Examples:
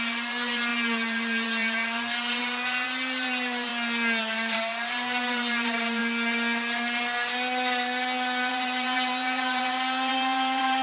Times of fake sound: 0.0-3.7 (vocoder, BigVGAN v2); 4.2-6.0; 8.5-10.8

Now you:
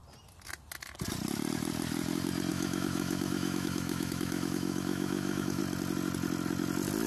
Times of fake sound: 2.5-5.6 (autoencoder, DAC-VAE)

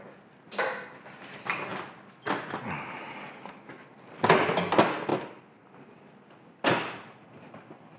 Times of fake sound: none